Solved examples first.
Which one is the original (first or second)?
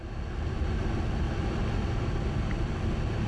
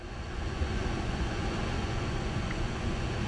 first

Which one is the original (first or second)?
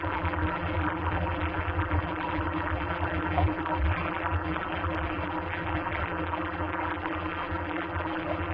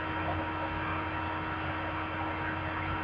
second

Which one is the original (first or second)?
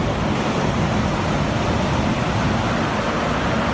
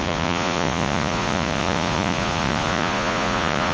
first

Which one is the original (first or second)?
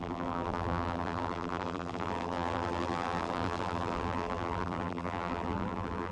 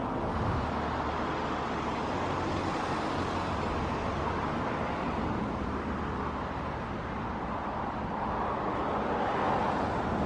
second